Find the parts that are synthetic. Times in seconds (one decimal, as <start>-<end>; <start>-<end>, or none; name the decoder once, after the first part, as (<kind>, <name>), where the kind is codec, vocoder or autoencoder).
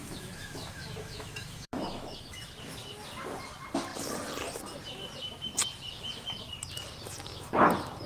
0.0-2.5 (autoencoder, DAC-VAE)